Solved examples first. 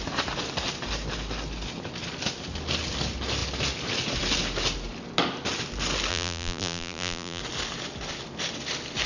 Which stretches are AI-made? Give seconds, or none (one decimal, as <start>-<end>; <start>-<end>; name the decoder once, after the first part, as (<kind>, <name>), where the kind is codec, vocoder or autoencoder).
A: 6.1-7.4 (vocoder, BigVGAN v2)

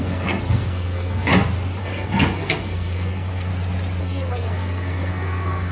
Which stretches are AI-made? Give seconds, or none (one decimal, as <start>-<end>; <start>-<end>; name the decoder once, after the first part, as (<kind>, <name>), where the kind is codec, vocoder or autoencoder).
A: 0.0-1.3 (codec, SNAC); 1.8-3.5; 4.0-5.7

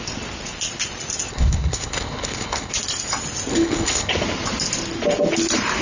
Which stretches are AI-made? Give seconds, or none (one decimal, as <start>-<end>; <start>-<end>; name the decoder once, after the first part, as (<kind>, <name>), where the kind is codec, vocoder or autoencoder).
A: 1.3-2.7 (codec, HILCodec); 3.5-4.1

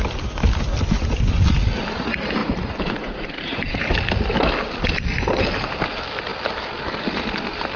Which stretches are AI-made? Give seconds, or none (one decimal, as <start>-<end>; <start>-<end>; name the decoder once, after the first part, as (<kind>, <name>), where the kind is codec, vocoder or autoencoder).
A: 2.4-3.8 (vocoder, Vocos)